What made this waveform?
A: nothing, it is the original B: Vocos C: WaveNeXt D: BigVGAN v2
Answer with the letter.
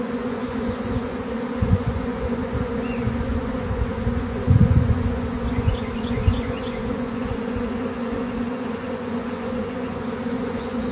B